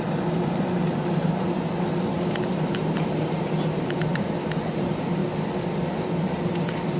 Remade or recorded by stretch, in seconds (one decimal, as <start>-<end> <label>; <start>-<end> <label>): 0.0-5.2 remade; 5.2-6.0 recorded; 6.0-7.0 remade